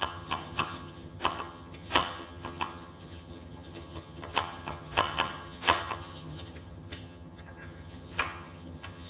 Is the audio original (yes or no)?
no